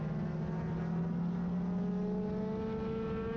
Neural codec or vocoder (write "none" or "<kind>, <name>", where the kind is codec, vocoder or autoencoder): none